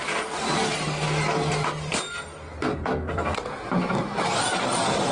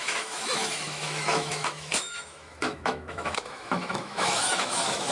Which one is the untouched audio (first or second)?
first